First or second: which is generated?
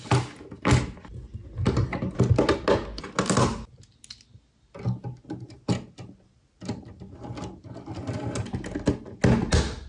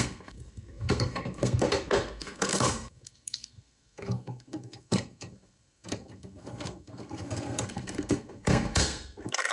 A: second